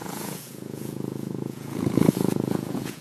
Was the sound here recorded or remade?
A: remade